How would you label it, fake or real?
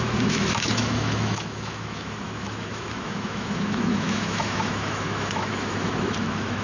fake